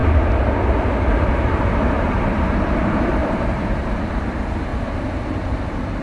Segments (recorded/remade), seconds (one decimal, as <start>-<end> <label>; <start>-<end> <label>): 0.0-2.0 recorded; 2.0-4.7 remade; 4.7-5.5 recorded; 5.5-6.0 remade